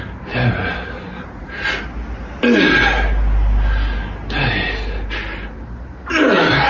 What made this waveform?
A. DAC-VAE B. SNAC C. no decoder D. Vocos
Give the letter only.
C